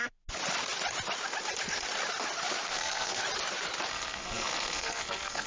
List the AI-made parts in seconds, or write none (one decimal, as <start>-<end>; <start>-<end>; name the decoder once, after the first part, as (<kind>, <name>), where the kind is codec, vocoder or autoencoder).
2.7-3.2 (codec, SNAC); 3.9-5.5